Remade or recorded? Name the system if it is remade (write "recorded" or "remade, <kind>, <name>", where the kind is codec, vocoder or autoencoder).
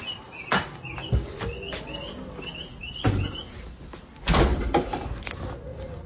recorded